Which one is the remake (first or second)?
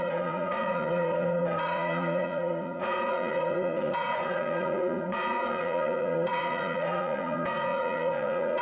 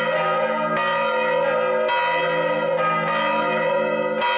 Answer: first